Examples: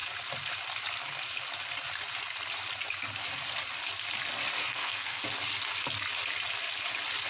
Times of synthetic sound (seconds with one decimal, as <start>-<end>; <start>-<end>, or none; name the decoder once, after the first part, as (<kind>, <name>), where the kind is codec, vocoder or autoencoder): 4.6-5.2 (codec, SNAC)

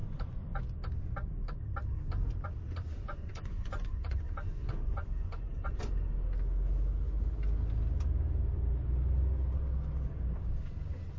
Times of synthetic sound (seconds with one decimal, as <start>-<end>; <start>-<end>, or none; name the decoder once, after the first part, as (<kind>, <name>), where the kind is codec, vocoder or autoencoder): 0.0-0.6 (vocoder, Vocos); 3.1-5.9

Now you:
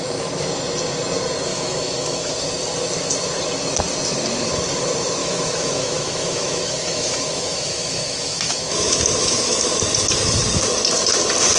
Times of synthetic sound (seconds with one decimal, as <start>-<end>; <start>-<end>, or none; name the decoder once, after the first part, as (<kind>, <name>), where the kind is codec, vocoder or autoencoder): 1.5-2.3 (autoencoder, DAC-VAE); 5.2-9.8

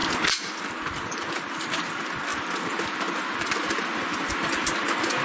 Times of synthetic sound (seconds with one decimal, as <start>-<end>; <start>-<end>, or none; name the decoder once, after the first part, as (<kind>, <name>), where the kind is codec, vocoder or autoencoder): none

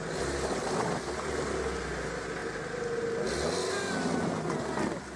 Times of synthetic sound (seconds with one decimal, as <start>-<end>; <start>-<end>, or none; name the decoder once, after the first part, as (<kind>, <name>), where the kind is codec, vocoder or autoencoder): 2.4-3.0 (vocoder, BigVGAN v2); 3.6-4.5

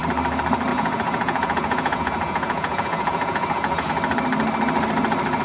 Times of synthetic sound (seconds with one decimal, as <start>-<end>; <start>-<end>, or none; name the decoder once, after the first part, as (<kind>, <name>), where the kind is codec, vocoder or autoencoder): 0.7-3.9 (vocoder, Vocos)